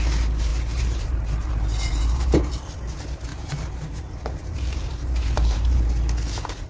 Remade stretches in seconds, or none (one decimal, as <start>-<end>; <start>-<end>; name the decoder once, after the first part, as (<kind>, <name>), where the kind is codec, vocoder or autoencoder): 0.5-1.5 (vocoder, BigVGAN v2); 1.9-2.5; 3.3-4.0; 4.4-5.8